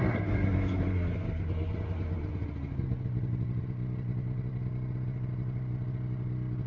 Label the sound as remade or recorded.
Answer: recorded